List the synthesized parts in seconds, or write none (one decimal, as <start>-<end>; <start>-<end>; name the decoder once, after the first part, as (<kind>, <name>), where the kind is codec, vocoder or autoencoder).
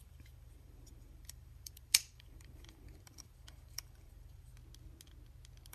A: 0.0-4.5 (vocoder, BigVGAN v2)